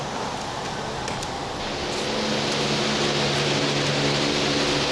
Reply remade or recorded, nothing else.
recorded